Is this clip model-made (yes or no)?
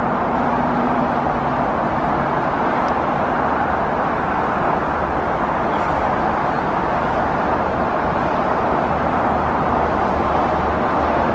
no